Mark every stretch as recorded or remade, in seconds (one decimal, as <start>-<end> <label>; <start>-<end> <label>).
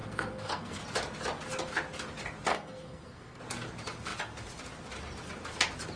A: 0.0-0.8 remade; 0.8-2.5 recorded; 2.5-3.4 remade; 3.4-6.0 recorded